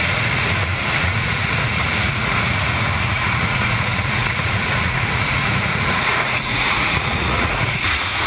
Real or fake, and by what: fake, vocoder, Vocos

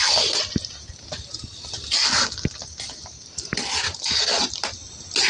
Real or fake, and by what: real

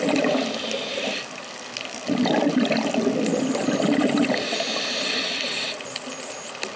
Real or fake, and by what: real